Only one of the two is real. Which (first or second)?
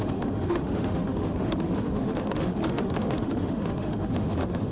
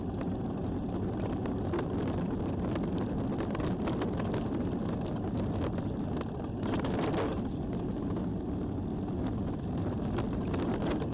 second